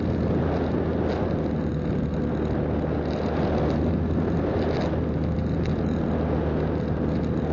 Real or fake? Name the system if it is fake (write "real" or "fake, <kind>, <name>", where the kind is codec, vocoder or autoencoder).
real